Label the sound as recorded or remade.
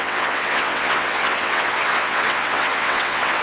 remade